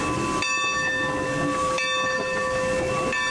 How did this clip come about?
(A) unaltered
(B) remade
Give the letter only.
A